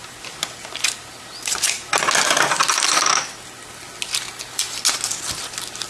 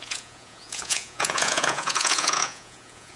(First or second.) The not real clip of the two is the second